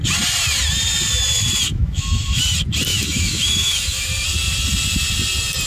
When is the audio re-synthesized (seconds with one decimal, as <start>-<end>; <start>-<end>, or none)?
1.7-2.4; 2.9-4.1